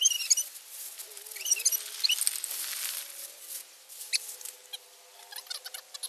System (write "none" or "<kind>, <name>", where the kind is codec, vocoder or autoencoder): none